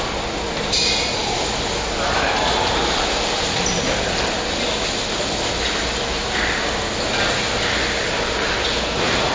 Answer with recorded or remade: recorded